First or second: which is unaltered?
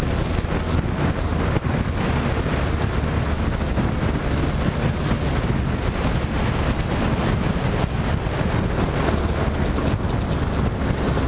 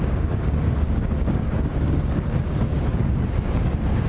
first